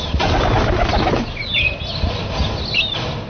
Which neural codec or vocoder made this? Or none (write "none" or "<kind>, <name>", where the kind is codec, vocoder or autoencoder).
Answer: none